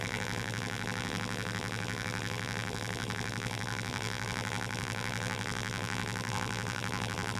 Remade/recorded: remade